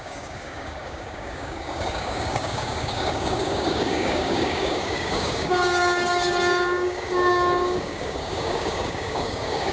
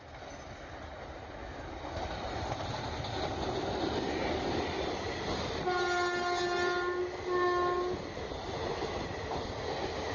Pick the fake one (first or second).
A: first